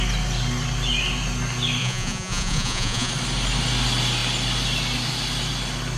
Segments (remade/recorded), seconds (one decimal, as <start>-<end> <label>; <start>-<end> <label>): 0.0-1.8 recorded; 1.8-3.1 remade; 3.1-6.0 recorded